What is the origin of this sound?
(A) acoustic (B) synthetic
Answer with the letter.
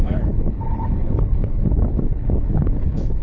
B